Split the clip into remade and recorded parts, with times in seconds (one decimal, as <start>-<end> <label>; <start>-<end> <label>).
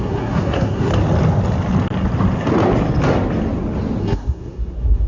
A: 0.0-0.9 remade; 0.9-4.0 recorded; 4.0-5.1 remade